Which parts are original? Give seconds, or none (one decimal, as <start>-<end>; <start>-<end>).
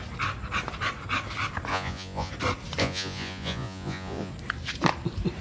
0.0-1.7; 2.3-2.8; 4.3-5.4